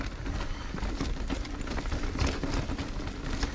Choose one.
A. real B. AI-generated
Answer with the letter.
A